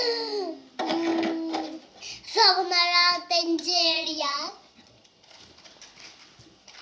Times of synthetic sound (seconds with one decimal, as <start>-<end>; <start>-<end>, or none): 3.4-5.0